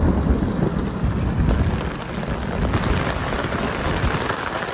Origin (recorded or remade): recorded